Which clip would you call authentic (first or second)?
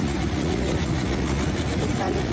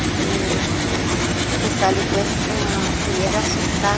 second